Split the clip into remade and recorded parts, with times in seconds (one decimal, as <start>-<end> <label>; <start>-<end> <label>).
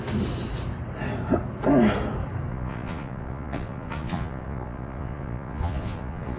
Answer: 0.0-2.5 recorded; 2.5-6.4 remade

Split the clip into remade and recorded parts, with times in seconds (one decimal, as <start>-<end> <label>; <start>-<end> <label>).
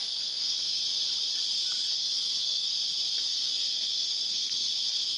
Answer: 0.0-0.8 remade; 0.8-1.9 recorded; 1.9-2.7 remade; 2.7-3.2 recorded; 3.2-5.2 remade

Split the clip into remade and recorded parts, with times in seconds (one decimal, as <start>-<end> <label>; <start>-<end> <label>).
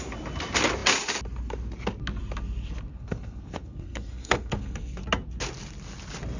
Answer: 0.0-2.9 recorded; 2.9-5.0 remade; 5.0-6.4 recorded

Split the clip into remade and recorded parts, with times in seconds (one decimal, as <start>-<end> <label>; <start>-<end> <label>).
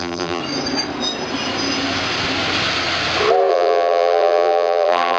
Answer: 0.0-0.4 remade; 0.4-3.5 recorded; 3.5-5.2 remade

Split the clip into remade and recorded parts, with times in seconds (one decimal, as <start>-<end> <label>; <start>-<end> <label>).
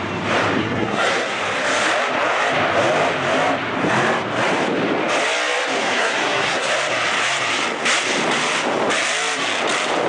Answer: 0.0-0.6 recorded; 0.6-1.4 remade; 1.4-5.8 recorded; 5.8-6.7 remade; 6.7-10.1 recorded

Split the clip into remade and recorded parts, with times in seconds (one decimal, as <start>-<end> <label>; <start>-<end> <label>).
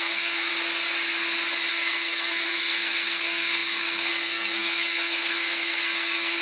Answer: 0.0-0.5 remade; 0.5-1.7 recorded; 1.7-6.4 remade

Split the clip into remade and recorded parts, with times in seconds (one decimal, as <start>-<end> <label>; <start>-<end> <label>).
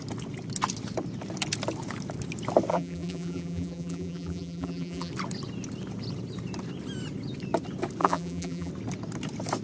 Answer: 0.0-2.7 recorded; 2.7-5.1 remade; 5.1-8.0 recorded; 8.0-8.7 remade; 8.7-9.6 recorded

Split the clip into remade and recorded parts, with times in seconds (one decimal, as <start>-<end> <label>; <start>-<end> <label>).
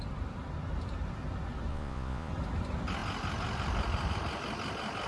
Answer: 0.0-1.7 recorded; 1.7-2.3 remade; 2.3-5.1 recorded